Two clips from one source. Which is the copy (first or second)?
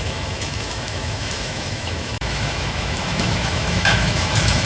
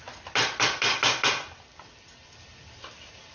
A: first